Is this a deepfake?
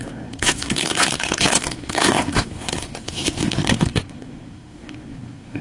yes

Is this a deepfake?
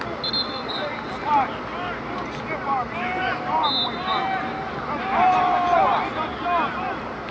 no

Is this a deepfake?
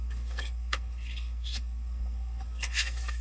yes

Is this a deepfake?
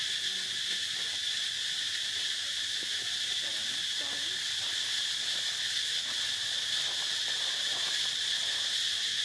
no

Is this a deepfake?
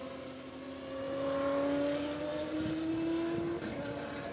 no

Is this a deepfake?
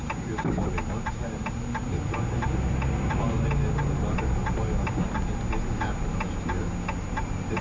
no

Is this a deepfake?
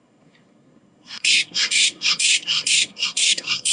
yes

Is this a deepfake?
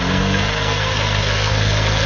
yes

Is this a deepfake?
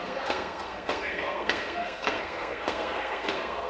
yes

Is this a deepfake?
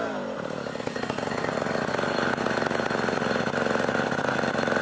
no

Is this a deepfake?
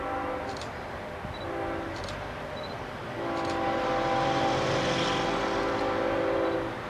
no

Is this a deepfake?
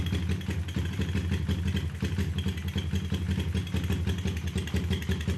no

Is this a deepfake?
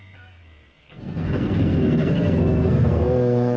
yes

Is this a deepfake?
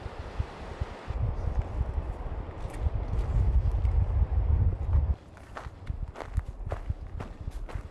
no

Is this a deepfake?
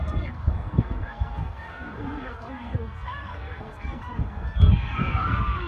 yes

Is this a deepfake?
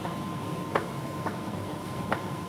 yes